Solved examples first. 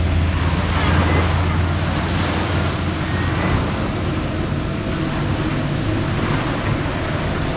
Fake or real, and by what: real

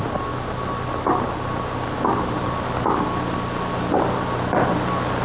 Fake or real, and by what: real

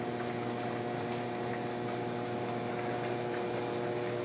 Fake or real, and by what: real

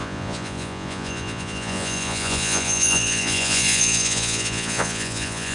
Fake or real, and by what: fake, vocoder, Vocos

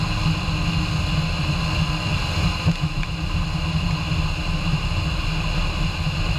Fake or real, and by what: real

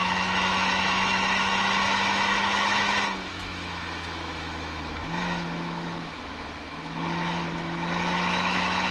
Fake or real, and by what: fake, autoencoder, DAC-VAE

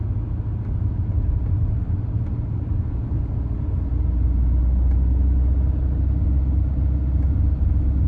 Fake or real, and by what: real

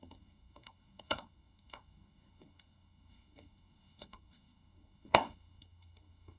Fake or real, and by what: fake, codec, SNAC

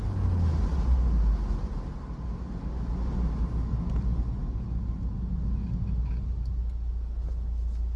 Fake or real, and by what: real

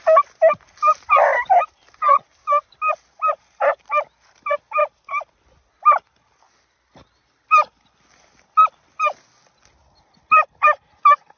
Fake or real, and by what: real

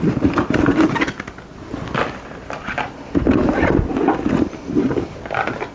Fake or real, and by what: real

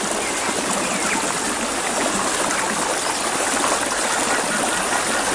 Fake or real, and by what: real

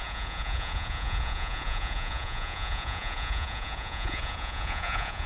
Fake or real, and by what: fake, vocoder, Vocos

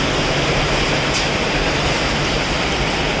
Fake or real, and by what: real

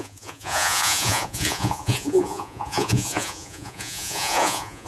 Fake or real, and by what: fake, vocoder, Vocos